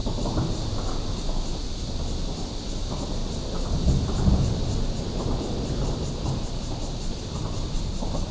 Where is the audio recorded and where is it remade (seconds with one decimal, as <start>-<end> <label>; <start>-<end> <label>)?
0.0-8.3 recorded